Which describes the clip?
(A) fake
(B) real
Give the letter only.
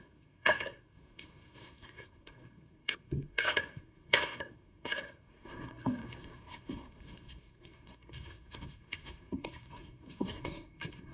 A